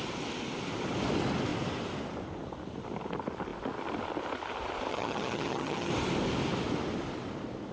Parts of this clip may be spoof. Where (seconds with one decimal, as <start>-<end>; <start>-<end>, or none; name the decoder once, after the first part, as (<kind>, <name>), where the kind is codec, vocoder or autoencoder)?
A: 4.9-5.9 (vocoder, HiFi-GAN)